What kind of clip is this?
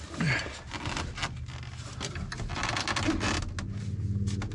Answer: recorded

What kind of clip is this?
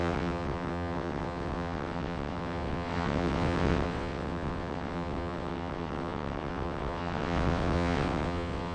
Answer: remade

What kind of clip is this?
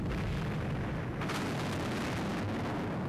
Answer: recorded